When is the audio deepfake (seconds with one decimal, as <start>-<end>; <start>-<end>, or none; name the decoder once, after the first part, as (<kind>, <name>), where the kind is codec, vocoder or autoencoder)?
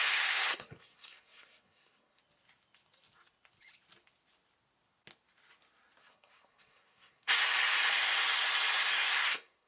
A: 0.0-2.2 (codec, SNAC); 6.0-7.3; 8.9-9.7